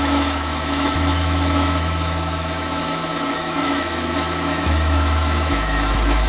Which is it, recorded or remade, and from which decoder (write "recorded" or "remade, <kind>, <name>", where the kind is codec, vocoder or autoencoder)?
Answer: remade, autoencoder, DAC-VAE